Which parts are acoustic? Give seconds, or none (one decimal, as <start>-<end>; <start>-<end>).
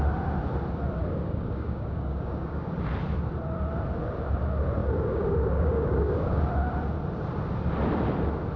0.0-1.0; 2.7-4.8; 6.4-8.6